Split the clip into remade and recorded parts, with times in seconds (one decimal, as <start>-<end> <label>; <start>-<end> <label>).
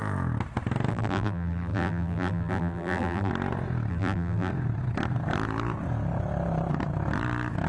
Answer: 0.0-0.9 recorded; 0.9-3.3 remade; 3.3-3.9 recorded; 3.9-4.5 remade; 4.5-7.7 recorded